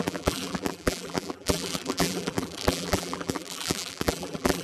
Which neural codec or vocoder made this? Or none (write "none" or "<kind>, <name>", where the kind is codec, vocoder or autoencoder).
vocoder, BigVGAN v2